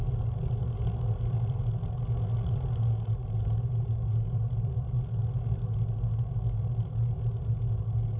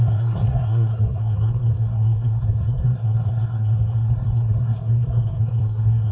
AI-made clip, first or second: second